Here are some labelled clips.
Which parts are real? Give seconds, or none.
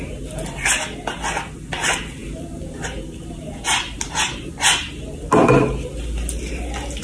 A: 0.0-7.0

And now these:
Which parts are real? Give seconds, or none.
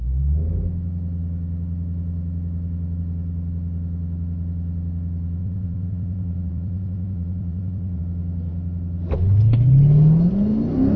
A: 0.0-5.4; 8.0-11.0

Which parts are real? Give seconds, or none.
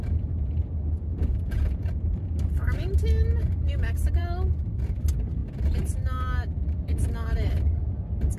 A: 0.0-1.1; 1.9-8.4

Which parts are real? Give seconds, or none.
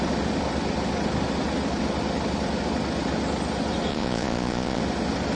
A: 0.0-3.9; 4.8-5.3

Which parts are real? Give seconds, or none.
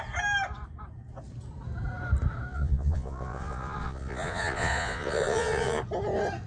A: 0.0-2.5; 5.8-6.5